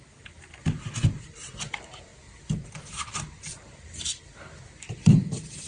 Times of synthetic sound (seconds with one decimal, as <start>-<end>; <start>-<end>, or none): none